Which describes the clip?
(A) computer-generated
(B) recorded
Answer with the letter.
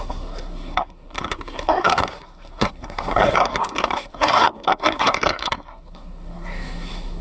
A